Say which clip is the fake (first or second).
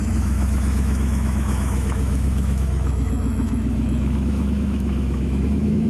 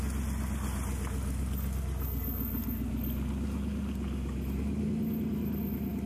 first